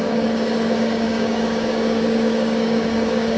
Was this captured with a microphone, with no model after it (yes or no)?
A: no